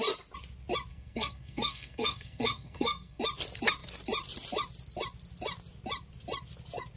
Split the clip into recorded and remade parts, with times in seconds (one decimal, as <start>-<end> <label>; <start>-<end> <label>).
0.0-0.9 recorded; 0.9-3.2 remade; 3.2-7.0 recorded